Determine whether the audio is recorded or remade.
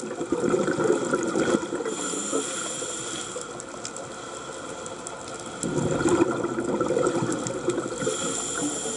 recorded